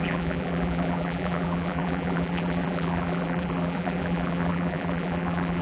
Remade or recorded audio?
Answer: remade